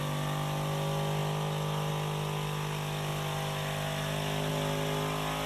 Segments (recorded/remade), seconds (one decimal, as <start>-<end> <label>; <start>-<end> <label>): 0.0-5.5 recorded